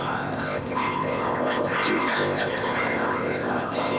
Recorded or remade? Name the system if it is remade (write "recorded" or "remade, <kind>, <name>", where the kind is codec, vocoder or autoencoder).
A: remade, codec, ZipCodec